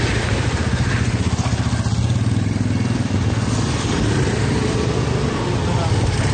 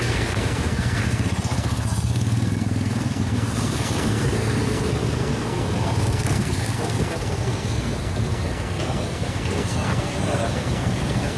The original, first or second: first